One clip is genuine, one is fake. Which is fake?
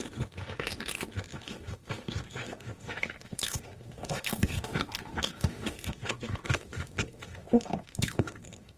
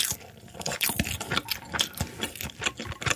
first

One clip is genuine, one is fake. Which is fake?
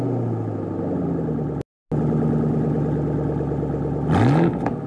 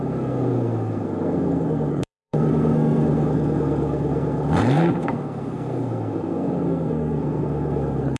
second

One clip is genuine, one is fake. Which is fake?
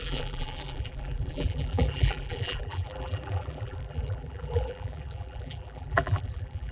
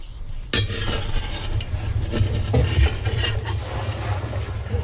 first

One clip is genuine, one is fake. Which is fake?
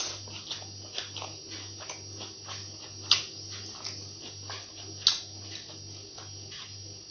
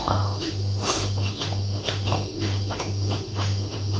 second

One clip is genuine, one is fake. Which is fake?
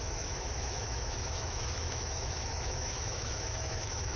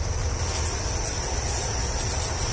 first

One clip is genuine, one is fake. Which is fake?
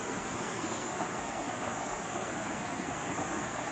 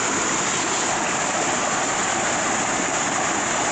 first